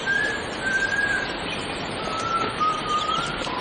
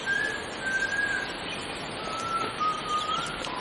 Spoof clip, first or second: first